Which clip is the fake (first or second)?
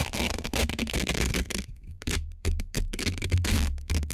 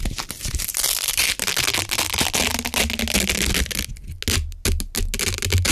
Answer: first